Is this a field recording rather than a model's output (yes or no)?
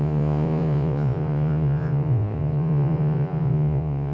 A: no